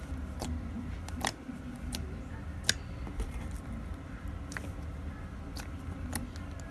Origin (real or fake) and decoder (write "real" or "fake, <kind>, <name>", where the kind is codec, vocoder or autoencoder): real